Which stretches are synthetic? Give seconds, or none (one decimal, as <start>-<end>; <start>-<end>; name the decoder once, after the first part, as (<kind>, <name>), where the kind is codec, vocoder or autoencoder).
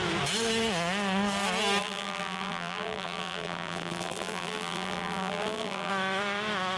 1.8-5.9 (vocoder, BigVGAN v2)